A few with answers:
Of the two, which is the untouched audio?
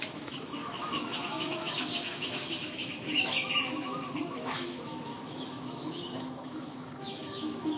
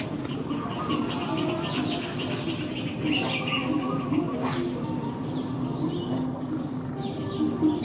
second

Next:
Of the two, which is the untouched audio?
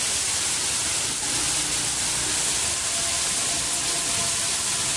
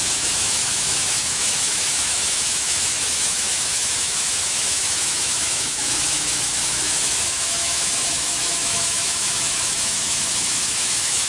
first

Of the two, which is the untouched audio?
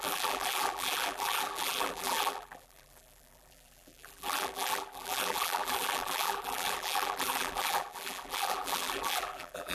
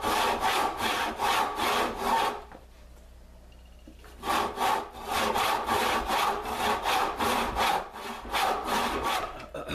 second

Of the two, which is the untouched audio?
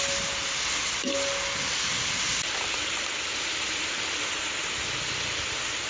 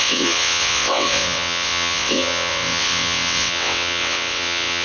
first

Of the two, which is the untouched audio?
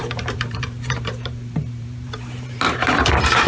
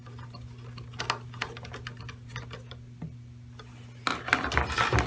second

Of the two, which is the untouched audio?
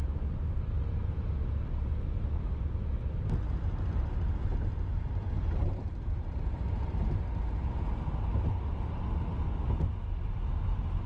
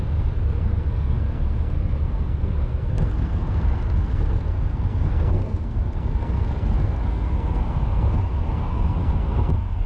first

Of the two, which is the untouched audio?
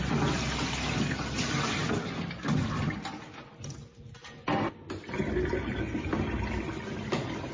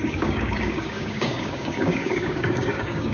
first